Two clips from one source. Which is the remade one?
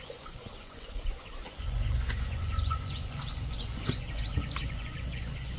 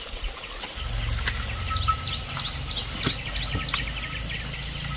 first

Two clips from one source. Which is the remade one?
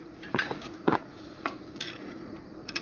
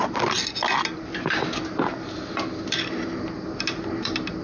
first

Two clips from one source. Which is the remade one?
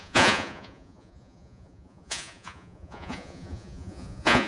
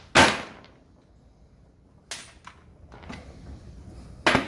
first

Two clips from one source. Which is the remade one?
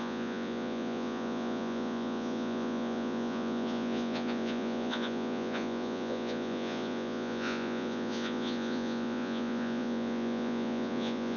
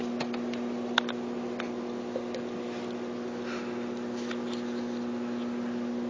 first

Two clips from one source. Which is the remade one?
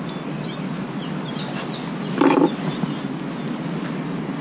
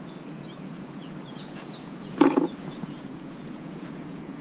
second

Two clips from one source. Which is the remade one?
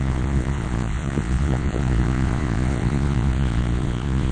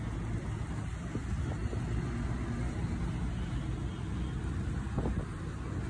first